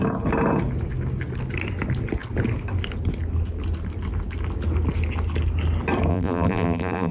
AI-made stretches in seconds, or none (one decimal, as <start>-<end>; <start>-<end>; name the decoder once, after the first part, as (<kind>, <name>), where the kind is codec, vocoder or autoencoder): 6.1-7.1 (vocoder, BigVGAN v2)